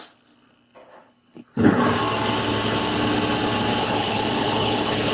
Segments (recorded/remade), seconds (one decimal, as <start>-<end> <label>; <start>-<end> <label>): 0.0-0.8 recorded; 0.8-1.8 remade; 1.8-3.8 recorded; 3.8-5.1 remade

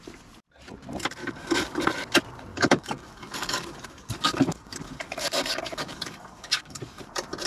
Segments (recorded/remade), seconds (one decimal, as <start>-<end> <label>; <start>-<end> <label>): 0.0-1.2 recorded; 1.2-1.8 remade; 1.8-2.5 recorded; 2.5-7.0 remade; 7.0-7.5 recorded

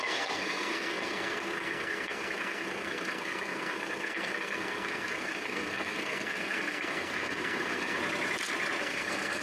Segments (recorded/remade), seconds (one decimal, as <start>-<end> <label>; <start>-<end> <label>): 0.0-8.0 remade; 8.0-8.8 recorded; 8.8-9.4 remade